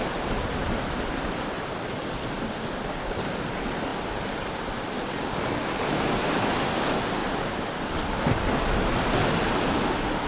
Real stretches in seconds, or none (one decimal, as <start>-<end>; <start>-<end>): 0.0-0.6; 2.5-3.9; 5.6-7.2; 7.9-10.3